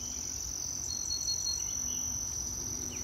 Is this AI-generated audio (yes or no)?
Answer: no